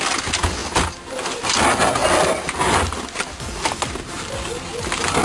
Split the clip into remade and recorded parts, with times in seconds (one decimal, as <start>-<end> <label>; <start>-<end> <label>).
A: 0.0-5.2 recorded